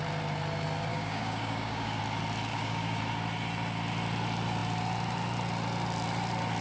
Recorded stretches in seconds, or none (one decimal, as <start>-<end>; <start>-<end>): 0.0-0.9; 2.0-2.5; 3.0-6.6